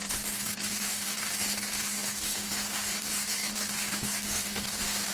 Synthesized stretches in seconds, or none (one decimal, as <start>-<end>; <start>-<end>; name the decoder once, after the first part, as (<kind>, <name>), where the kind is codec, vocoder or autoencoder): 0.0-5.1 (codec, DAC)

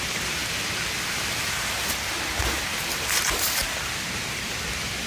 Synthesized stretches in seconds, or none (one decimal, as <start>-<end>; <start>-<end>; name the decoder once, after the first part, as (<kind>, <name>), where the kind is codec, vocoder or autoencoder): none

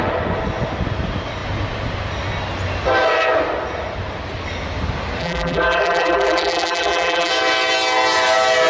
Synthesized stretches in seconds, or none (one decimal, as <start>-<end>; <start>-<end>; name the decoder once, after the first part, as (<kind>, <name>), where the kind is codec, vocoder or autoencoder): 5.2-7.3 (vocoder, BigVGAN v2)